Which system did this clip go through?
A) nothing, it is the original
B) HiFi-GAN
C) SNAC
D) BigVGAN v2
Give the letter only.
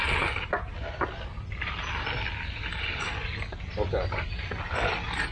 A